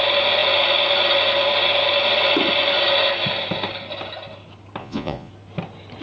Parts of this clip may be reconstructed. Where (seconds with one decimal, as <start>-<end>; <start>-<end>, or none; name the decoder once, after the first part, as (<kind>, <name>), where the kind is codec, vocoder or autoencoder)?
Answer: 4.8-5.3 (vocoder, Vocos)